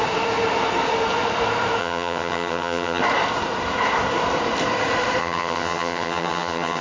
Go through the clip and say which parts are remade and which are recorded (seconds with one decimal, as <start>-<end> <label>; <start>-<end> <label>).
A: 0.0-1.8 recorded; 1.8-3.0 remade; 3.0-5.2 recorded; 5.2-6.8 remade